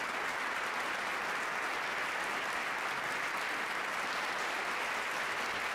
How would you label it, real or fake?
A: real